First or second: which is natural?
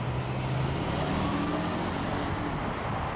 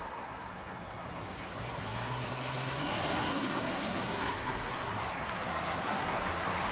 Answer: first